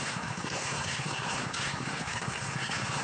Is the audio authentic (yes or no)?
no